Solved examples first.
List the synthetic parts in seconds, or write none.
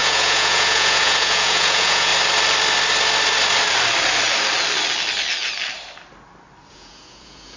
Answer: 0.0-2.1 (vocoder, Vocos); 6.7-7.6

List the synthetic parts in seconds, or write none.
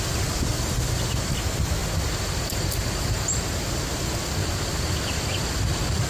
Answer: none